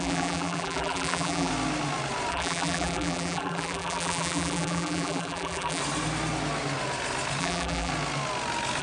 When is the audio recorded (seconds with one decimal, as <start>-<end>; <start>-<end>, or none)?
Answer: 1.5-2.3; 5.8-7.4; 7.9-8.8